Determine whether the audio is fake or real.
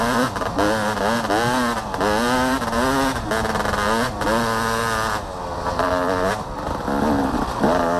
real